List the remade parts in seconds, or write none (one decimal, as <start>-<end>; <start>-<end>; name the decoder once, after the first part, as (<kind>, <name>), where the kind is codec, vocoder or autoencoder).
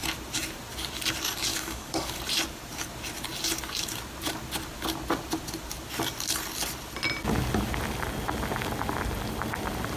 1.5-2.2 (codec, DAC)